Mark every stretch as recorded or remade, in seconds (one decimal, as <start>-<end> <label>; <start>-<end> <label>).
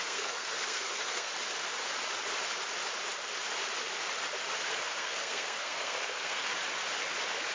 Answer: 0.0-1.3 remade; 1.3-4.7 recorded; 4.7-6.5 remade; 6.5-7.5 recorded